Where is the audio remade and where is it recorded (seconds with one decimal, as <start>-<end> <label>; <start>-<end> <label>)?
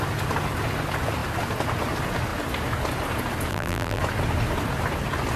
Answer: 0.0-3.5 recorded; 3.5-4.0 remade; 4.0-5.4 recorded